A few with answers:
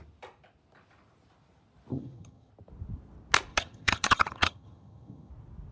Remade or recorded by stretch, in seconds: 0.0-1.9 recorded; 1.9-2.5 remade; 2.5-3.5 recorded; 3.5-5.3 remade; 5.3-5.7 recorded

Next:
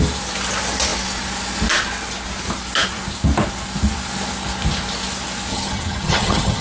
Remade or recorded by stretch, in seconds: 0.0-5.5 recorded; 5.5-6.6 remade

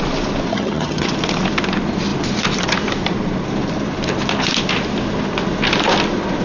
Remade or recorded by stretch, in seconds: 0.0-0.5 recorded; 0.5-1.1 remade; 1.1-6.4 recorded